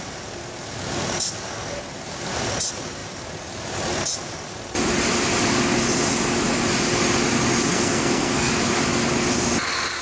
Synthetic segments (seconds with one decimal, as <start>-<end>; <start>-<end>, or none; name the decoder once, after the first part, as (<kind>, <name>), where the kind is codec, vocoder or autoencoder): 7.7-8.5 (codec, SNAC)